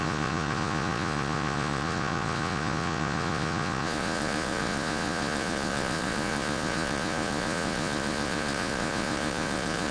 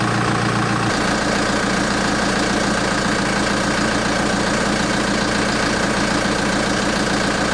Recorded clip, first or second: second